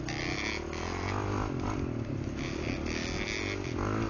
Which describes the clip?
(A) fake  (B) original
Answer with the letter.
B